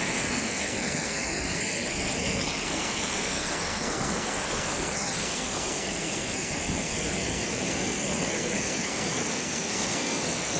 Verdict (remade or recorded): remade